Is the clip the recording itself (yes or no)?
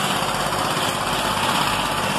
yes